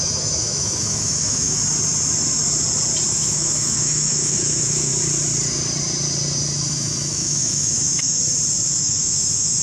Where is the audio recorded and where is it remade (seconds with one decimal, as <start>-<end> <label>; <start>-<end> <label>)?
0.0-1.6 remade; 1.6-3.1 recorded; 3.1-4.9 remade; 4.9-6.7 recorded; 6.7-8.2 remade; 8.2-8.8 recorded; 8.8-9.6 remade